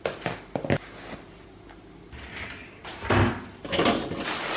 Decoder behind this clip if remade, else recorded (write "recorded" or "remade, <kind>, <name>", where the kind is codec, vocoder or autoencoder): recorded